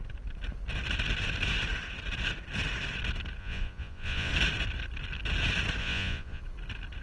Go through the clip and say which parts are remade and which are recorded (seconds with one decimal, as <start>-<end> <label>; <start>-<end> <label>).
0.0-3.4 recorded; 3.4-4.3 remade; 4.3-5.8 recorded; 5.8-6.4 remade; 6.4-7.0 recorded